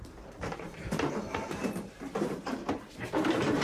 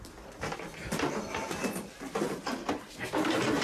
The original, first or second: second